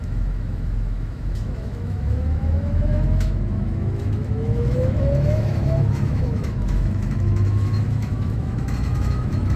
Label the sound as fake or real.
fake